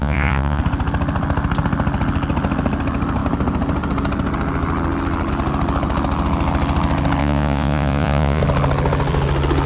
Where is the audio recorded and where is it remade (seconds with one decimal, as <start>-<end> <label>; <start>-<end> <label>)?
0.0-0.6 remade; 0.6-7.2 recorded; 7.2-8.4 remade; 8.4-9.7 recorded